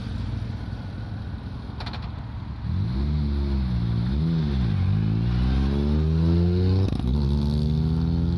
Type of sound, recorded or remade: recorded